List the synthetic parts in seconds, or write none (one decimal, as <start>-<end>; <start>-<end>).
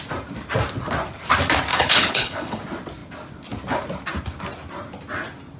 1.7-2.6